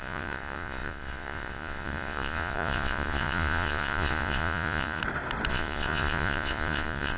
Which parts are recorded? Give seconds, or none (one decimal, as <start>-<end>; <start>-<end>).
5.0-5.5